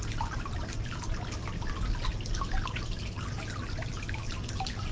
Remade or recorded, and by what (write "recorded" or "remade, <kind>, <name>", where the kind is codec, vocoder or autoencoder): recorded